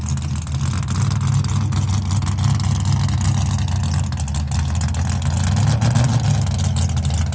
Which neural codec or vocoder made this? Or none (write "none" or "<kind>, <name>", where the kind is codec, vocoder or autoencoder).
none